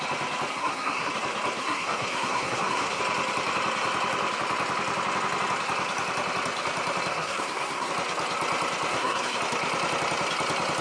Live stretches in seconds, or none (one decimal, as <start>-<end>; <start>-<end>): 0.0-0.5; 1.1-1.6; 3.0-7.1; 7.9-8.9; 9.4-10.8